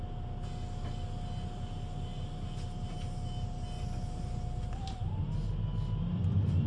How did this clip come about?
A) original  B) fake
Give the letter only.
A